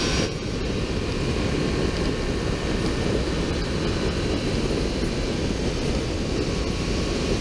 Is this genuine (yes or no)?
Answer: yes